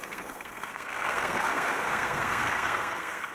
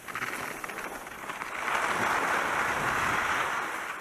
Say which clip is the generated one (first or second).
first